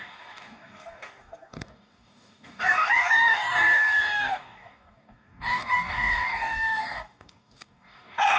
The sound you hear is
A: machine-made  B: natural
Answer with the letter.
A